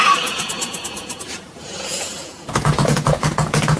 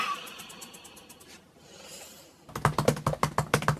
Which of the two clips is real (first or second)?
second